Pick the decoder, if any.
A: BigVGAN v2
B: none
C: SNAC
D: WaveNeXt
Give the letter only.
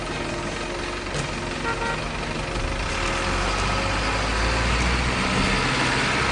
B